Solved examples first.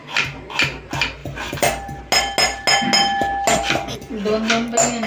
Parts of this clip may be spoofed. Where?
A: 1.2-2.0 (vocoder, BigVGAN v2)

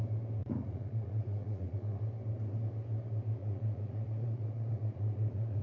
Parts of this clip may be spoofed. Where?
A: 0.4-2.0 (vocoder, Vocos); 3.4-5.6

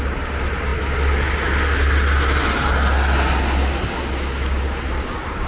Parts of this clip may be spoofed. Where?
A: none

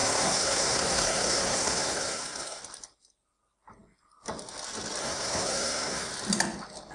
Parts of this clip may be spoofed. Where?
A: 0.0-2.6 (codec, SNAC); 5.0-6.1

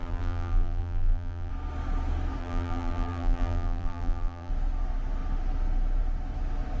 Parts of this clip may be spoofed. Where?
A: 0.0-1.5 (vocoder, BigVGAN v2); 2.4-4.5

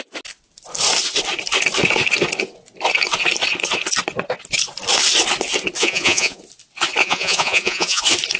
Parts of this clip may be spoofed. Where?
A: 5.8-6.4 (vocoder, Vocos); 7.0-8.0